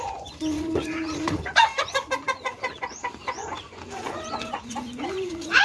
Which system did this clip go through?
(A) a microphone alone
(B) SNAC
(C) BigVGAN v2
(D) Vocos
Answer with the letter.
D